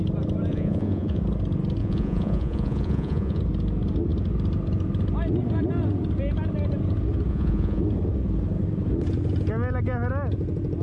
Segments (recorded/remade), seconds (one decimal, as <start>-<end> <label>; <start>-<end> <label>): 0.0-0.5 recorded; 0.5-1.2 remade; 1.2-1.8 recorded; 1.8-3.4 remade; 3.4-7.3 recorded; 7.3-7.8 remade; 7.8-10.8 recorded